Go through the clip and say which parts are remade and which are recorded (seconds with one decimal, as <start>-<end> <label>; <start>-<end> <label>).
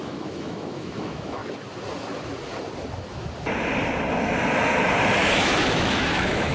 0.0-1.4 remade; 1.4-5.3 recorded; 5.3-6.5 remade